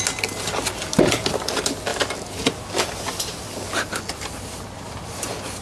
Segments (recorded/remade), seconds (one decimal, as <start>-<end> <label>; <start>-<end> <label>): 0.0-5.6 recorded